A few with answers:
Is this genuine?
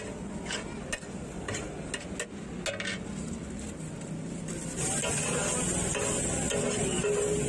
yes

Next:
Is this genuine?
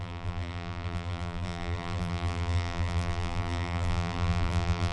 no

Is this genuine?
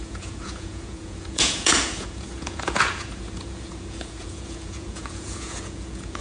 no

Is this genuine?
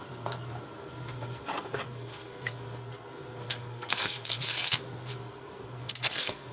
no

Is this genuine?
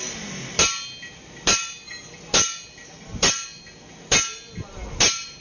yes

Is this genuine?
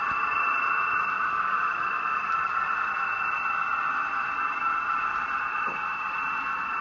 yes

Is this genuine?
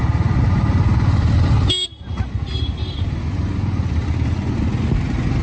yes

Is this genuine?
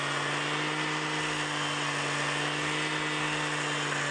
yes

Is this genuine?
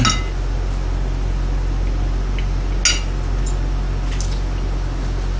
yes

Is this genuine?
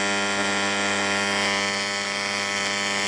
yes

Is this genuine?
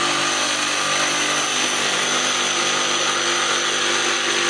yes